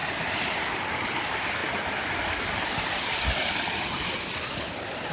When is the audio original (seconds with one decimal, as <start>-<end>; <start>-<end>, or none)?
0.0-5.1